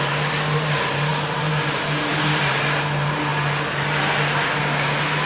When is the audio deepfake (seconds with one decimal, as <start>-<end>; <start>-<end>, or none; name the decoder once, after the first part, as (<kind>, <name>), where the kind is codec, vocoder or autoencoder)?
1.1-2.6 (vocoder, BigVGAN v2)